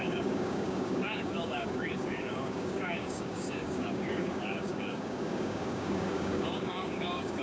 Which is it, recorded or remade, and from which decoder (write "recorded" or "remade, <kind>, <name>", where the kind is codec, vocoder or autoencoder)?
remade, codec, DAC